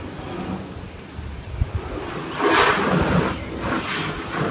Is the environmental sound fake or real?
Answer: real